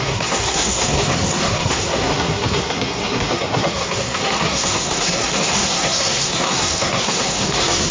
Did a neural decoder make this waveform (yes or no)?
yes